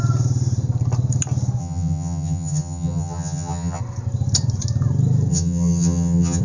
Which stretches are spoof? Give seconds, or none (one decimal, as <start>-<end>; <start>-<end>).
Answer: 1.6-3.8; 5.3-6.4